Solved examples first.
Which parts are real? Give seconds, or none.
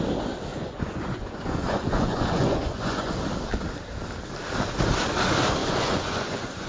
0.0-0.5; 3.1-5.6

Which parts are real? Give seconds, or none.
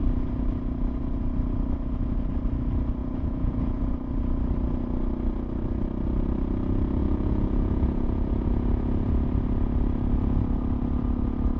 0.0-3.0; 3.8-7.0; 8.5-11.6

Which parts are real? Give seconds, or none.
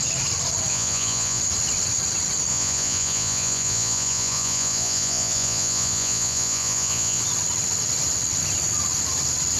0.0-0.7; 1.4-2.5; 7.2-9.6